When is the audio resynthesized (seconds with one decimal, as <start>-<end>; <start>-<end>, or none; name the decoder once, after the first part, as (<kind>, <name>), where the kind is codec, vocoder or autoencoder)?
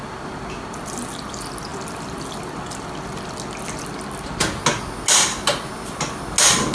none